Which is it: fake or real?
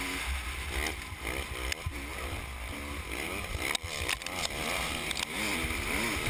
real